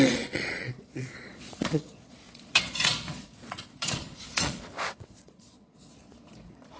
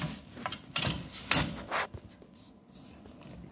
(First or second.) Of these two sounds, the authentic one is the second